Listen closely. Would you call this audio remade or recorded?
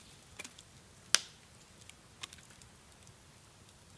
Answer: recorded